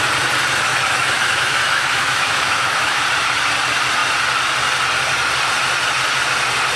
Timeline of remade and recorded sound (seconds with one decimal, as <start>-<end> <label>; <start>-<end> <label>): 0.0-0.7 recorded; 0.7-3.0 remade; 3.0-6.8 recorded